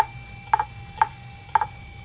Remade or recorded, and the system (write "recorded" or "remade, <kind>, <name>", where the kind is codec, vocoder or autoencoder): recorded